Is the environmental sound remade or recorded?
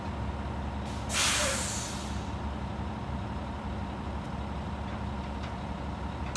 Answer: recorded